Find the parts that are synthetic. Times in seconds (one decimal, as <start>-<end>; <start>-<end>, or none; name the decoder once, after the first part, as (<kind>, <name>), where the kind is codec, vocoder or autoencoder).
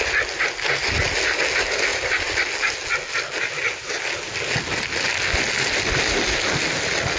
none